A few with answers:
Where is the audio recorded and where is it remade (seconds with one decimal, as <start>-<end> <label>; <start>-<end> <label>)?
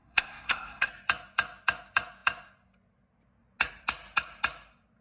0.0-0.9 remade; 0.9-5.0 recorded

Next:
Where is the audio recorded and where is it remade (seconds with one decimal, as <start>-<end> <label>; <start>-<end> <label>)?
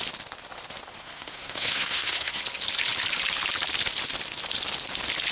0.0-1.0 recorded; 1.0-2.4 remade; 2.4-5.3 recorded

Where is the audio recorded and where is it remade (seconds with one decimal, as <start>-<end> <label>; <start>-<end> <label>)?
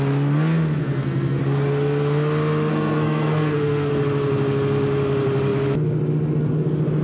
0.0-0.8 recorded; 0.8-1.4 remade; 1.4-2.7 recorded; 2.7-3.9 remade; 3.9-7.0 recorded